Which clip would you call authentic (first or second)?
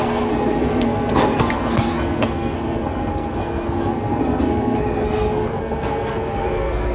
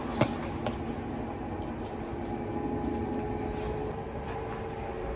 second